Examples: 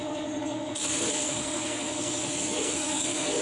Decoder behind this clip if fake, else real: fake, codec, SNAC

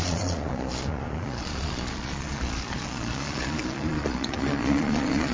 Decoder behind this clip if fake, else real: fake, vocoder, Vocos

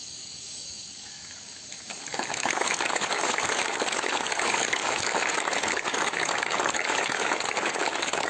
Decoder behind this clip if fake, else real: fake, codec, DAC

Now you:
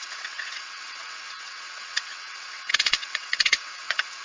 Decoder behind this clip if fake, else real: fake, vocoder, WaveNeXt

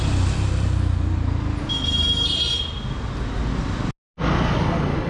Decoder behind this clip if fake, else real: real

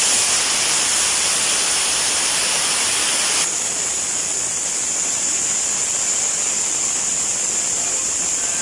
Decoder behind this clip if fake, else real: real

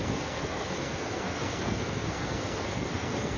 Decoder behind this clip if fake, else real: fake, codec, SNAC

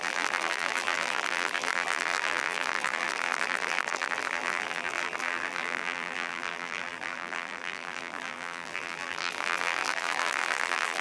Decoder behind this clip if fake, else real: fake, vocoder, BigVGAN v2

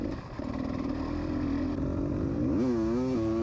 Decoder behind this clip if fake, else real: real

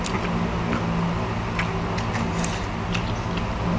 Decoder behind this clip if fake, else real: real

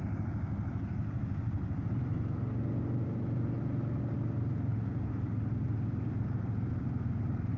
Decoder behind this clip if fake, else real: real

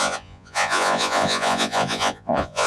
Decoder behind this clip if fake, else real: fake, vocoder, Vocos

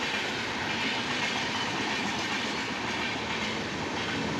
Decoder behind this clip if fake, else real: real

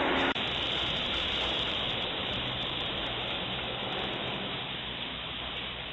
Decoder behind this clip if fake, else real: fake, vocoder, BigVGAN v2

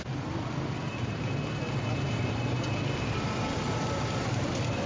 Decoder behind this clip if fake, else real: real